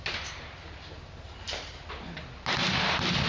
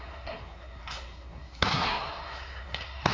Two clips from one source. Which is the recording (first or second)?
first